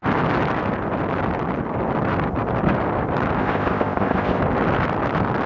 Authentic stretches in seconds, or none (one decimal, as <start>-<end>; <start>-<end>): 0.0-3.4; 4.4-5.5